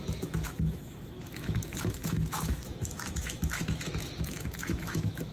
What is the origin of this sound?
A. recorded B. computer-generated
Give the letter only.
B